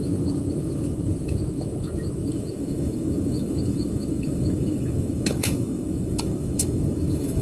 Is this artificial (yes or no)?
yes